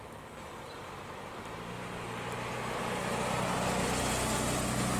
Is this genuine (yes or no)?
yes